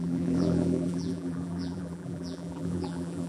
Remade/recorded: remade